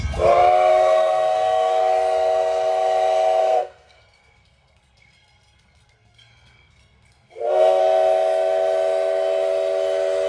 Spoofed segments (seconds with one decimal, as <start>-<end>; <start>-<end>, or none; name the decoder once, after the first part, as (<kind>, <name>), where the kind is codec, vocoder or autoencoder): 0.7-1.8 (codec, SNAC); 3.4-7.8